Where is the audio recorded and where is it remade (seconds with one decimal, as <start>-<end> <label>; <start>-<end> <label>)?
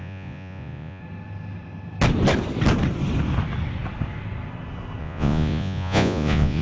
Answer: 0.0-1.0 remade; 1.0-5.0 recorded; 5.0-6.6 remade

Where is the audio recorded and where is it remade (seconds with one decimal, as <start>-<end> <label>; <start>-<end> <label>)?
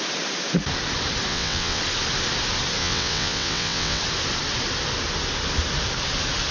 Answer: 0.0-1.3 recorded; 1.3-1.8 remade; 1.8-2.8 recorded; 2.8-4.0 remade; 4.0-6.5 recorded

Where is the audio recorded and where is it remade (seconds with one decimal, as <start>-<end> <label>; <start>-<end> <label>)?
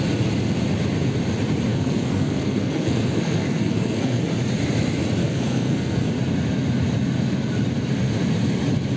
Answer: 0.0-1.7 recorded; 1.7-4.2 remade; 4.2-5.2 recorded; 5.2-6.1 remade; 6.1-9.0 recorded